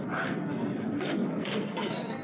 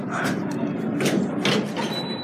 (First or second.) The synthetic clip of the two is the first